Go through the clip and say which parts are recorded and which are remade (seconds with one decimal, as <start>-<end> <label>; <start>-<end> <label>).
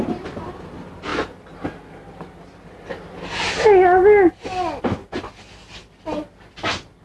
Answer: 0.0-7.0 recorded